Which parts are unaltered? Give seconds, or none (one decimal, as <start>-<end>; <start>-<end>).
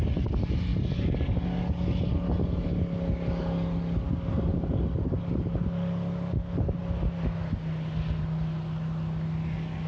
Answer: 0.0-9.9